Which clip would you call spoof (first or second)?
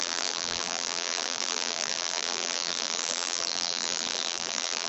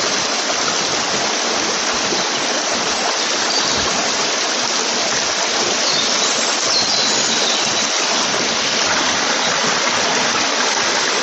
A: first